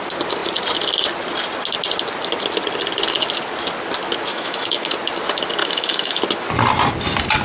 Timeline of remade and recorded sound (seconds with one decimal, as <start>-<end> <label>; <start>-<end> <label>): 0.0-4.3 recorded; 4.3-4.9 remade; 4.9-5.6 recorded; 5.6-6.2 remade; 6.2-7.4 recorded